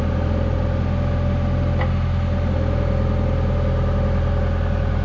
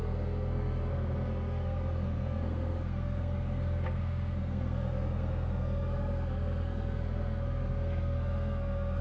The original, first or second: first